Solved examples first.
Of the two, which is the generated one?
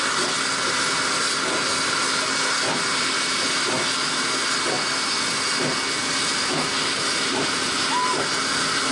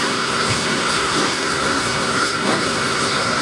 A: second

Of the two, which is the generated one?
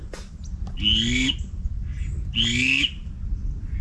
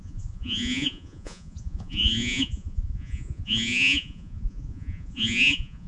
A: second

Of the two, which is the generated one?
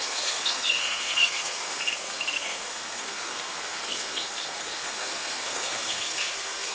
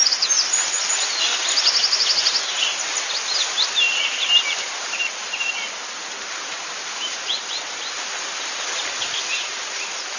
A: first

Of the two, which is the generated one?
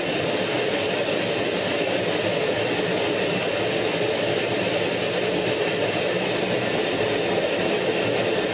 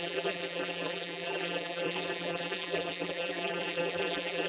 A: second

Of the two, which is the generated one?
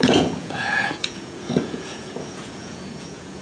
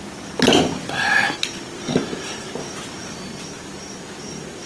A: first